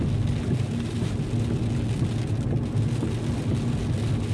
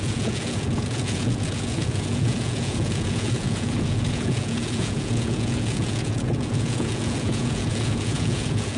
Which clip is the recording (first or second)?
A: first